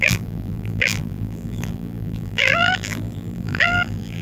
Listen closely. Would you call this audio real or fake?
fake